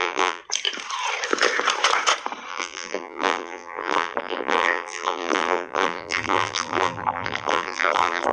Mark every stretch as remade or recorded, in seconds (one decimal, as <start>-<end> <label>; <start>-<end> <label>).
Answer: 0.0-0.4 remade; 0.4-2.5 recorded; 2.5-8.3 remade